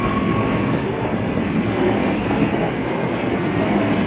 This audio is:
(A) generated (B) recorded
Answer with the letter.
A